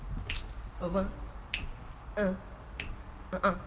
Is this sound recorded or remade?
recorded